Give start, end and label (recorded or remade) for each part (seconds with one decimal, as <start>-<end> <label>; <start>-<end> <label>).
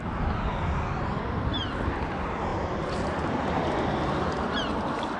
0.0-5.2 recorded